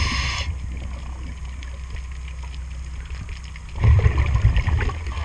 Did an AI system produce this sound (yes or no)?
no